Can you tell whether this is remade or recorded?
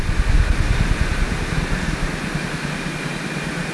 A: recorded